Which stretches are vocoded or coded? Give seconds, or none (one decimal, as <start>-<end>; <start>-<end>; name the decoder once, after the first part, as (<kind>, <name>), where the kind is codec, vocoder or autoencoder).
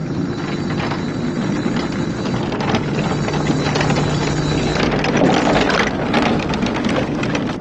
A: none